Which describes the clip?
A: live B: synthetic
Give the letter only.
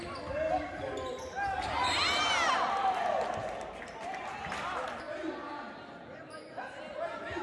A